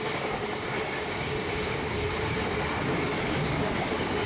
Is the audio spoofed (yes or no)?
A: yes